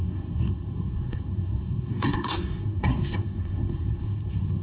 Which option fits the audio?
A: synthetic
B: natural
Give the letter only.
A